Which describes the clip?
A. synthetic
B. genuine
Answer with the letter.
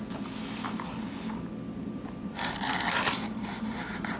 B